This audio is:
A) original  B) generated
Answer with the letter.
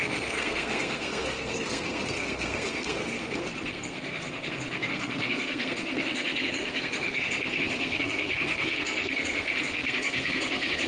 B